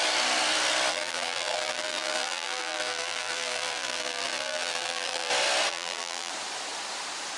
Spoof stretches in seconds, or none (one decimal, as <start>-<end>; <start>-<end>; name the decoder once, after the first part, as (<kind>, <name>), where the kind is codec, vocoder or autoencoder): 0.9-5.3 (vocoder, BigVGAN v2); 5.7-6.3